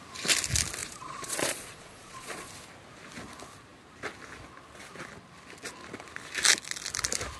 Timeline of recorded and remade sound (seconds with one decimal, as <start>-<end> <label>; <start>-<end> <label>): 0.0-0.8 recorded; 0.8-2.5 remade; 2.5-7.4 recorded